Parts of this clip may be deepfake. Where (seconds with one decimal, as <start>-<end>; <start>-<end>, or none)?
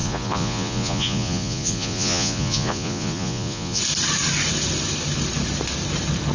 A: 0.0-3.8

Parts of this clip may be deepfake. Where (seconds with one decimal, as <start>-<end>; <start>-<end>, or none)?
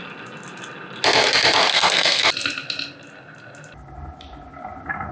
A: 1.7-2.2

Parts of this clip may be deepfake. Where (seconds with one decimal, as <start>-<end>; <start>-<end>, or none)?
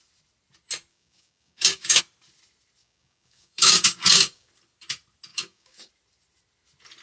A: 0.9-2.0; 2.8-4.5; 5.3-5.9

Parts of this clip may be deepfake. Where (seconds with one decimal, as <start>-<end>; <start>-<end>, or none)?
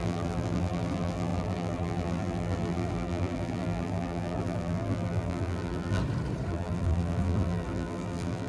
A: 0.0-6.0; 6.5-8.5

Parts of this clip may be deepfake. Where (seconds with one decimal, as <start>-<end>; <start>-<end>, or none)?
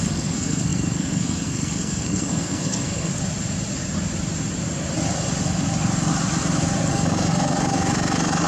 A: 0.0-3.1; 6.9-8.5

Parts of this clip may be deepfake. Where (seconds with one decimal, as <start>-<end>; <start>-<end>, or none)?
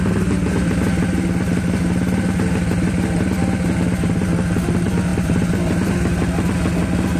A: none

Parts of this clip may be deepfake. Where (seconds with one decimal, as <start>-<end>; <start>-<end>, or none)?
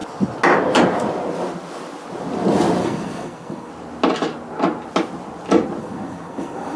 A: 2.8-3.7; 5.8-6.8